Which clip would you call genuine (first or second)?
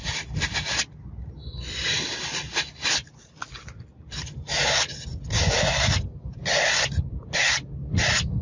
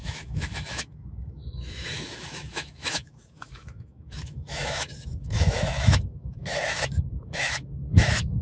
first